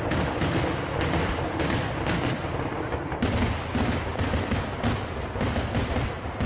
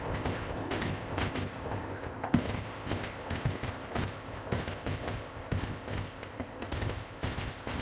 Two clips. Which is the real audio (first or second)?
first